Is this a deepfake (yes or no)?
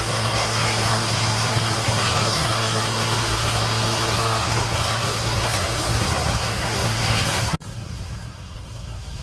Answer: yes